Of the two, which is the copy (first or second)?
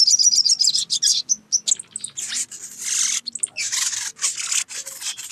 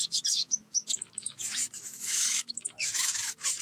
second